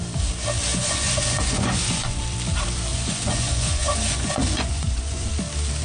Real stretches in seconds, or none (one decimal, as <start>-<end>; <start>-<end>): 0.0-0.7; 2.2-2.9; 5.3-5.8